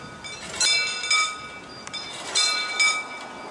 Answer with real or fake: real